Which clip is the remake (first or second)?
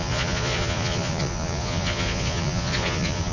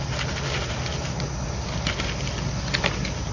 first